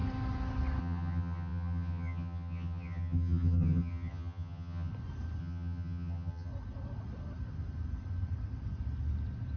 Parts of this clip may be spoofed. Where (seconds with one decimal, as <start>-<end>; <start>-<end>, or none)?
0.8-4.9; 5.4-6.5